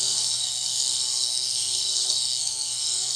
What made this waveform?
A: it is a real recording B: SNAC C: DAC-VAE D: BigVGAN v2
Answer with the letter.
B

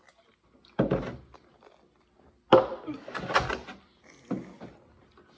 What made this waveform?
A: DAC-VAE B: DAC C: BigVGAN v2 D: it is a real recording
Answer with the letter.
D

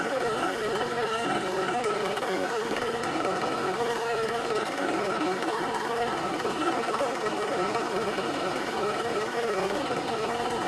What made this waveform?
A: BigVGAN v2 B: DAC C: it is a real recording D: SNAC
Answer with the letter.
D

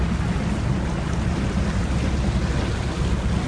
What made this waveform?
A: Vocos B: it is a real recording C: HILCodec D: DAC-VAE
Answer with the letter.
B